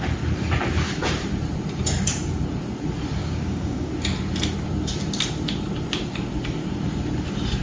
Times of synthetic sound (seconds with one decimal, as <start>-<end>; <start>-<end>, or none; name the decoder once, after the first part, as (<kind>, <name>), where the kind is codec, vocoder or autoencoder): 3.2-3.9 (codec, DAC)